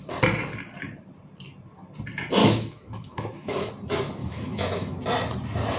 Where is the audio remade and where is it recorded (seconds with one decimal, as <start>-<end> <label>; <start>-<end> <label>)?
0.0-2.4 recorded; 2.4-3.7 remade; 3.7-4.2 recorded; 4.2-5.0 remade; 5.0-5.8 recorded